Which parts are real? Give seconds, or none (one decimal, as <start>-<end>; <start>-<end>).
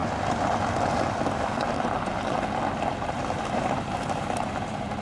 0.0-3.0